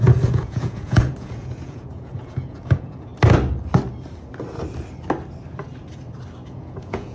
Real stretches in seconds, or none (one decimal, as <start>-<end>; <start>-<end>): 3.1-6.5